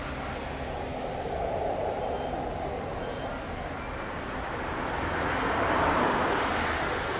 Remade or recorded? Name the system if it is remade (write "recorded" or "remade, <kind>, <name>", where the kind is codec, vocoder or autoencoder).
recorded